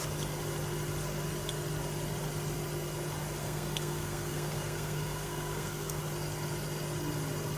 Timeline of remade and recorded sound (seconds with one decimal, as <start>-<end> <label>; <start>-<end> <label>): 0.0-3.4 recorded; 3.4-6.0 remade; 6.0-7.6 recorded